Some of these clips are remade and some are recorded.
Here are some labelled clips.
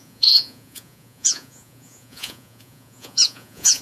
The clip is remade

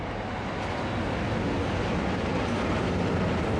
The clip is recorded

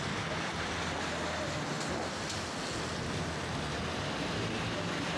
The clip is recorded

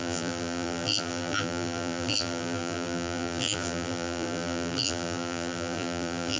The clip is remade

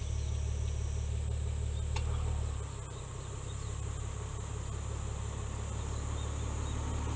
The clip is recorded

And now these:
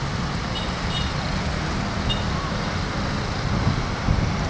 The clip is recorded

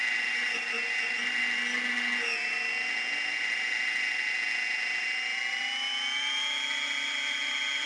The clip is recorded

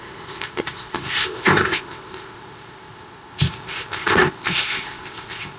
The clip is remade